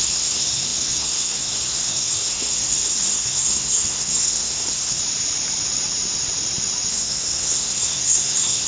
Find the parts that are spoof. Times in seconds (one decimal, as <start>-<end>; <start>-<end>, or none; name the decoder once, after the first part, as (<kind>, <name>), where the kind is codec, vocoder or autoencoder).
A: 0.0-5.0 (codec, SNAC); 6.9-8.7

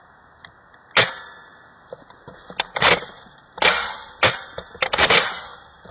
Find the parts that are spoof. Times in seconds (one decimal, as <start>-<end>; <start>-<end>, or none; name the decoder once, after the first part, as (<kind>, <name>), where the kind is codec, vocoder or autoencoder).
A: none

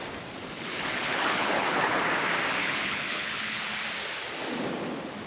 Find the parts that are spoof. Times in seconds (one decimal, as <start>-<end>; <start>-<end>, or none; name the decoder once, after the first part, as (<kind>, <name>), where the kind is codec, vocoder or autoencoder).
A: 0.4-2.0 (codec, HILCodec); 2.6-3.6

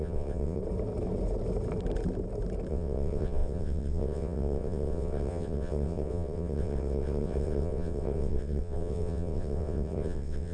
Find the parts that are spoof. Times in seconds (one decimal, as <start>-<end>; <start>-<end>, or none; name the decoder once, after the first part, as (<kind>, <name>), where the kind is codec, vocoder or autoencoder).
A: 0.0-0.6 (vocoder, WaveNeXt); 2.7-10.5

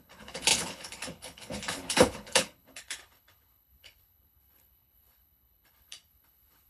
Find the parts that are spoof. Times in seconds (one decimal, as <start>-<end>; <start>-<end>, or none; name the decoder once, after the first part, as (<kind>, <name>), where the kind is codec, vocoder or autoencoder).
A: 0.0-6.7 (codec, HILCodec)

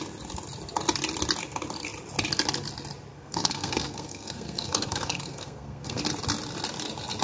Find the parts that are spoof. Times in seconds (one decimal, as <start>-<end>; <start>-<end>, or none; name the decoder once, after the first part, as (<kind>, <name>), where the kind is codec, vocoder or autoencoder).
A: 3.1-6.0 (codec, SNAC)

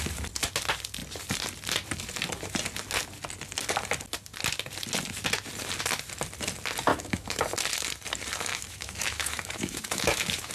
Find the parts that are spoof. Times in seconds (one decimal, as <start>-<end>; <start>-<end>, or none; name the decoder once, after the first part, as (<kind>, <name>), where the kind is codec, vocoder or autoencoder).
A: 6.9-7.4 (autoencoder, DAC-VAE); 8.5-10.5

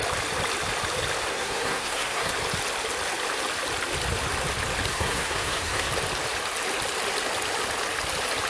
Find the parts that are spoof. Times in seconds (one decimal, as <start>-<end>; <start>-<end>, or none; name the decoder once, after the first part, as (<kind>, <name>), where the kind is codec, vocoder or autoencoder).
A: 1.3-2.3 (codec, SNAC); 4.9-5.9